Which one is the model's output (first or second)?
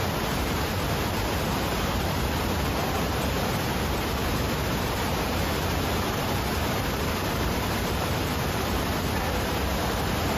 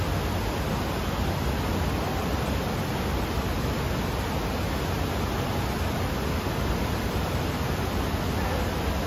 first